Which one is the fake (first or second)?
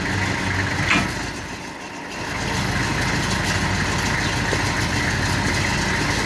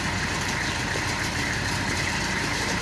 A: second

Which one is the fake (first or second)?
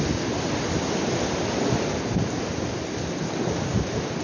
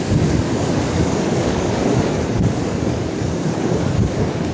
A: second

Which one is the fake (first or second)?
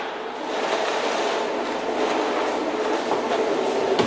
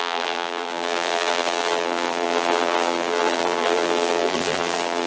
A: second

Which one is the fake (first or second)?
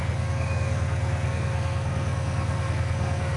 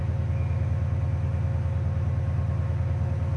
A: first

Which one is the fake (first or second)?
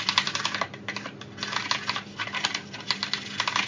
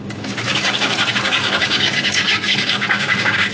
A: second